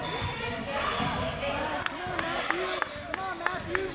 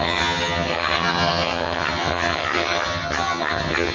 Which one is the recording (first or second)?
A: first